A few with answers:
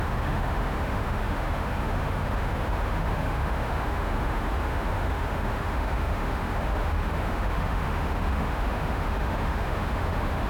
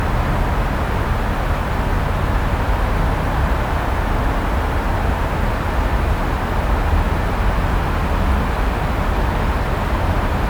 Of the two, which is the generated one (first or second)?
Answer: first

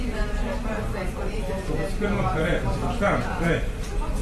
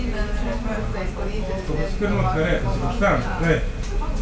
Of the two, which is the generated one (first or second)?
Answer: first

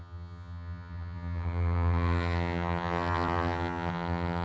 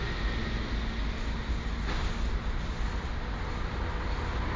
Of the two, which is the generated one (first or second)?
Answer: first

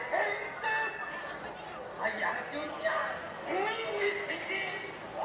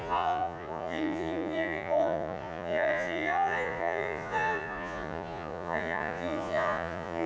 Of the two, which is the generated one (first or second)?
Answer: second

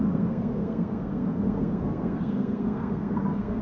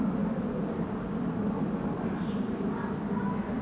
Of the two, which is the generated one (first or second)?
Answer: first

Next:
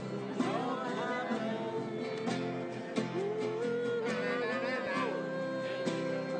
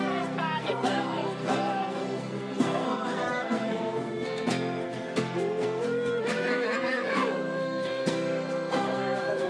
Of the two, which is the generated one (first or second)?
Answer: second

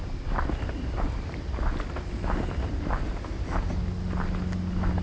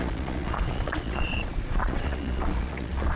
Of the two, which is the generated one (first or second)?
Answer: second